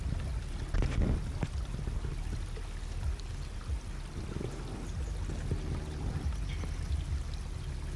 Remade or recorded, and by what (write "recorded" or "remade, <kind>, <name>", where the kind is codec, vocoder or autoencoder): recorded